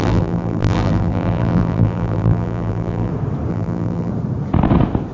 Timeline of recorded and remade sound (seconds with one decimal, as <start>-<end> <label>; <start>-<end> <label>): 0.0-3.1 remade; 3.1-3.5 recorded; 3.5-4.1 remade; 4.1-5.1 recorded